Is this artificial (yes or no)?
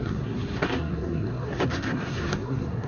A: yes